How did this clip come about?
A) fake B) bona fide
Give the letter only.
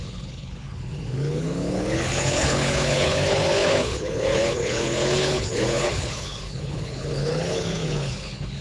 A